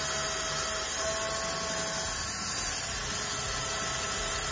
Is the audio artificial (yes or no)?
no